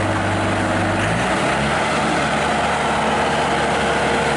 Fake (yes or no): no